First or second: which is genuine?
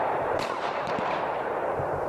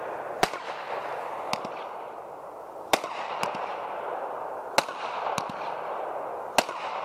second